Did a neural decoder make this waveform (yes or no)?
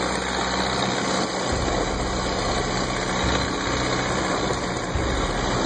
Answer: no